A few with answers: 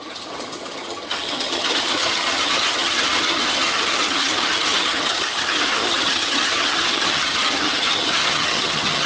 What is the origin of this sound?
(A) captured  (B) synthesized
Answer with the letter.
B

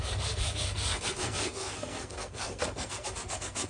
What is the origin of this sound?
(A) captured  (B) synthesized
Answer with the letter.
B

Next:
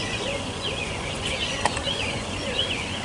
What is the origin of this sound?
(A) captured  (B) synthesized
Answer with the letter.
B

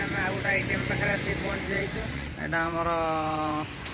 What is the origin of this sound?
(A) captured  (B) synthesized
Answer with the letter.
B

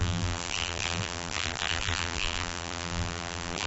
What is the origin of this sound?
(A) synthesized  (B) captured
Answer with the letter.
A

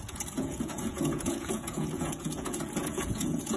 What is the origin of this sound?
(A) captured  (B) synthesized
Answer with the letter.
B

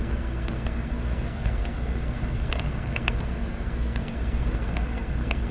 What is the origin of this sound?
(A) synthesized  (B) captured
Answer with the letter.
A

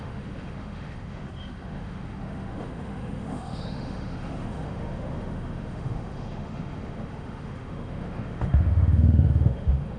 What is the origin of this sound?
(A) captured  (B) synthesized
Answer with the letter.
B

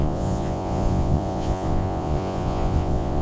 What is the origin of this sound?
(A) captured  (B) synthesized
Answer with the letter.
B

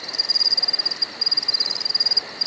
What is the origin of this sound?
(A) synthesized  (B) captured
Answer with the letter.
B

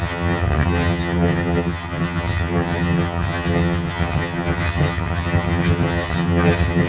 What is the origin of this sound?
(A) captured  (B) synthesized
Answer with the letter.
B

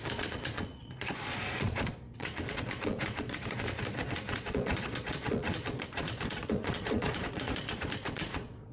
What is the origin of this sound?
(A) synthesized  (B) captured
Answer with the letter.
A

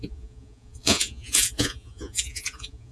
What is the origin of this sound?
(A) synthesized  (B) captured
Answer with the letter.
A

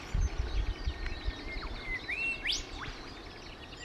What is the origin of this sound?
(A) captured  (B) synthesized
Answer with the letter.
A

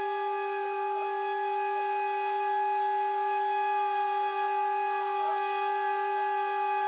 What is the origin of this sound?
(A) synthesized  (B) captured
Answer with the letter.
B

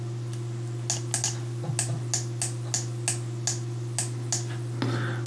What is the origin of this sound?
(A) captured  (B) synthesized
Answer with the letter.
A